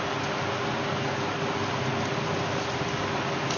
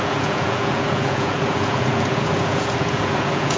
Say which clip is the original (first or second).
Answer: first